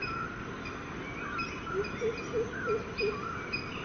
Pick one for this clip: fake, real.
real